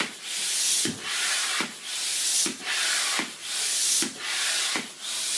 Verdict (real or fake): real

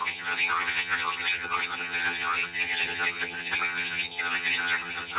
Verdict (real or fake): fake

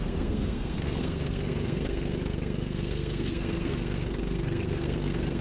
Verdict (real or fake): fake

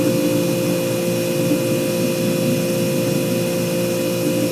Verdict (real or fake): real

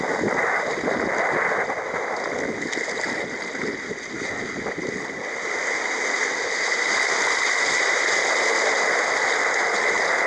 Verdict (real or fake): real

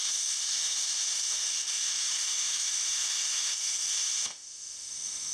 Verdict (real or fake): fake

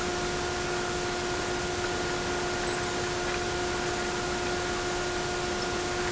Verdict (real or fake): real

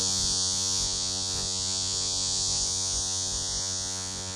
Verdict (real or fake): fake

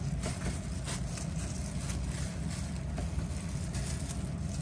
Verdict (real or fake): real